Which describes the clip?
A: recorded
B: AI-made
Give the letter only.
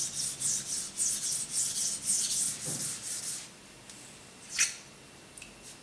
A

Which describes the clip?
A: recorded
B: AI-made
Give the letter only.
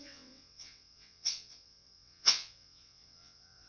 B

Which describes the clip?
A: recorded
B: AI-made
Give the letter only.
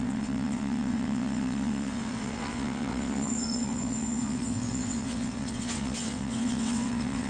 B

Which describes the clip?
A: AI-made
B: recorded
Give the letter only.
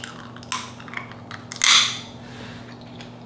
B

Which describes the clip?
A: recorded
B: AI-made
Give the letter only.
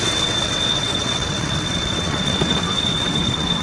B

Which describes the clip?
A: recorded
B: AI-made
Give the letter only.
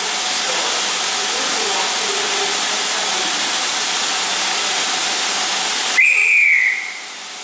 A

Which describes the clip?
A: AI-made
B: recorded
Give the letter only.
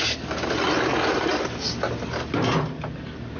B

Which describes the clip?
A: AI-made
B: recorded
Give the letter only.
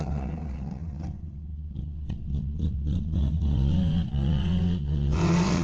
A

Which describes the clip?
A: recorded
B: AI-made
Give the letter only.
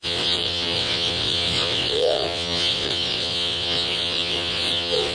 B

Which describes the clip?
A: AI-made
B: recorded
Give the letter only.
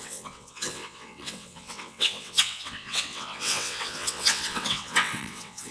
A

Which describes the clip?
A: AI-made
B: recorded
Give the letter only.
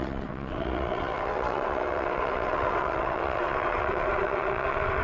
A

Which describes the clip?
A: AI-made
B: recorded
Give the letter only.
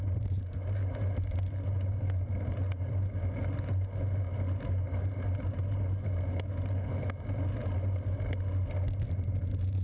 B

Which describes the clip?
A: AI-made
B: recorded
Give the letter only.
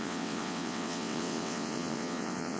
A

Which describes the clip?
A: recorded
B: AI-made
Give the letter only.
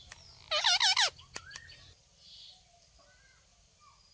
A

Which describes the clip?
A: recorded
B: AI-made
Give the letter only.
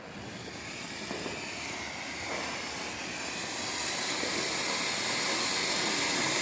A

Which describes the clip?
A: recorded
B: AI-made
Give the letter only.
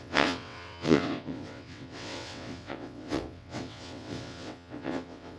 B